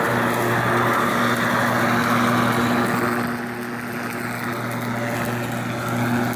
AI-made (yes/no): no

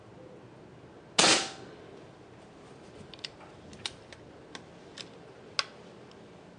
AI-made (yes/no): no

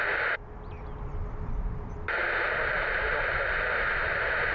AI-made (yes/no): no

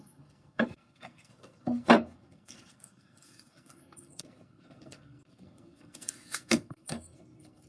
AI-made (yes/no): yes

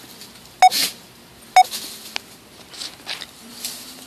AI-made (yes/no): no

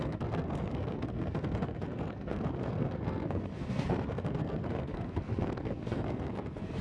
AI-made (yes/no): yes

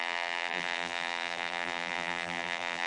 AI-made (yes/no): yes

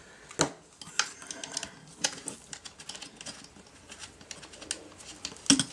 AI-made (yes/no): no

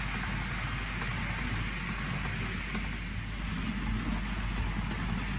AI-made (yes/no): no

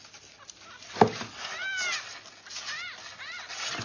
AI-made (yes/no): no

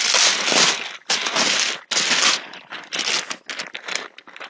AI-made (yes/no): no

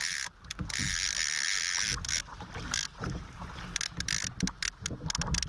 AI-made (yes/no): no